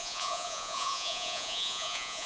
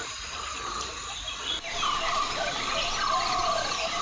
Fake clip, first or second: first